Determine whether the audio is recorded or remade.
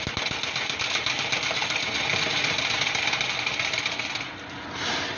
recorded